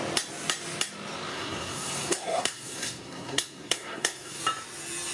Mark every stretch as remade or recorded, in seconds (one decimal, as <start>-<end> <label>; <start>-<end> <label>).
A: 0.0-1.3 recorded; 1.3-4.4 remade; 4.4-5.1 recorded